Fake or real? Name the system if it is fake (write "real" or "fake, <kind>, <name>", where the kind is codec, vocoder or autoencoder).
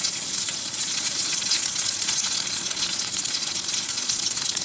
fake, vocoder, Vocos